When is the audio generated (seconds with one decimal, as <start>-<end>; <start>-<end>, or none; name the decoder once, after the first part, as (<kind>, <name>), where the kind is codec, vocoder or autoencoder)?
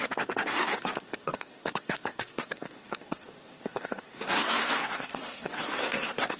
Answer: 0.0-6.4 (codec, SNAC)